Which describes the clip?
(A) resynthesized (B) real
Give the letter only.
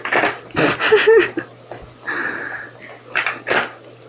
B